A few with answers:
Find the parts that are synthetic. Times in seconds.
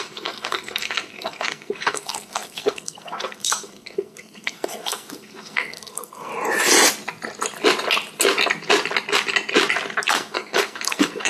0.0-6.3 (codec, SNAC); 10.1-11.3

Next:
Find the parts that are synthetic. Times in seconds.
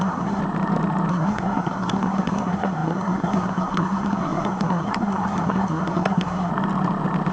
0.0-0.4 (codec, SNAC); 1.1-6.5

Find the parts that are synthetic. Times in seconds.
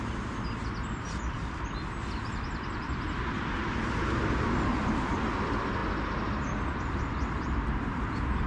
none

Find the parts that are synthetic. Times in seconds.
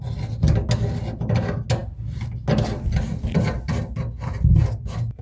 none